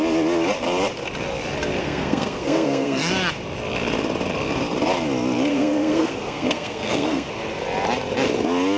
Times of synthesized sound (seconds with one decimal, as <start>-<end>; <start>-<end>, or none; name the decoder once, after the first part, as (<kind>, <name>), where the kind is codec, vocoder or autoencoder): 1.8-3.1 (codec, SNAC); 5.5-7.3